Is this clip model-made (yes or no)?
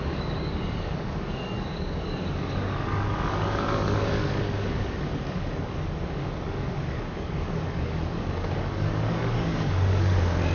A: yes